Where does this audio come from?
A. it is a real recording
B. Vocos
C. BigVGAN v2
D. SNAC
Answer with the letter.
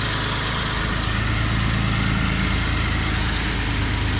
A